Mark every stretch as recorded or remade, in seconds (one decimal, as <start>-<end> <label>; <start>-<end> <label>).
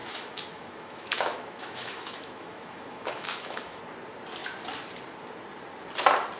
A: 0.0-3.8 remade; 3.8-6.4 recorded